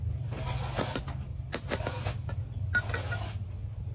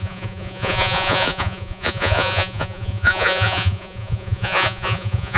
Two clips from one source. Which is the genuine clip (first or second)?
first